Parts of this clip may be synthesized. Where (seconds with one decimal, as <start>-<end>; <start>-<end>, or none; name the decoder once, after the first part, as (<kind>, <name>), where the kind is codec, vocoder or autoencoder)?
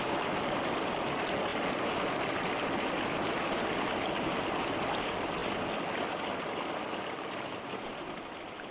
none